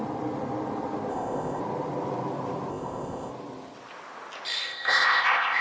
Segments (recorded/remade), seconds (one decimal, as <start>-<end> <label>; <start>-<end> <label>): 0.0-1.1 recorded; 1.1-1.6 remade; 1.6-2.7 recorded; 2.7-3.3 remade; 3.3-4.6 recorded; 4.6-5.6 remade